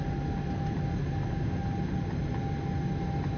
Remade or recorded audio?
recorded